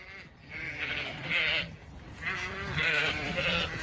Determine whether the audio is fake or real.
real